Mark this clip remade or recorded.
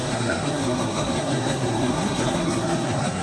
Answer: remade